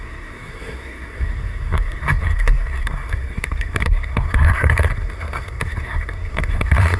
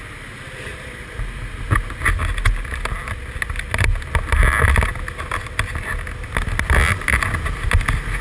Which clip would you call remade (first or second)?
first